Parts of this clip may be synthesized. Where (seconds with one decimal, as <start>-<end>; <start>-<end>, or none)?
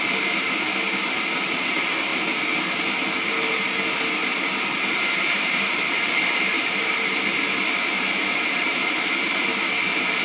0.0-2.1; 4.2-10.2